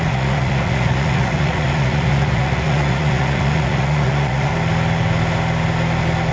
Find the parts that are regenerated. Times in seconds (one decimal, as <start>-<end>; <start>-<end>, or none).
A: 0.0-4.5